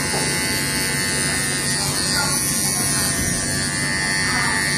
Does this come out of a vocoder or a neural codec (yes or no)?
no